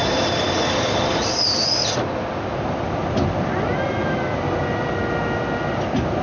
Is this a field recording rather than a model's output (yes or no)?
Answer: yes